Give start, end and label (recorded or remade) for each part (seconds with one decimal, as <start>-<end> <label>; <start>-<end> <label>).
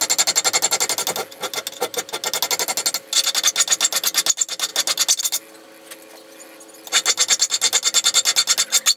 0.0-9.0 recorded